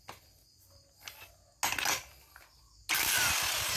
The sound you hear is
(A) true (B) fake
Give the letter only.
A